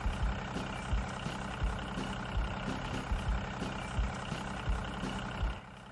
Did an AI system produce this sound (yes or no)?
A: no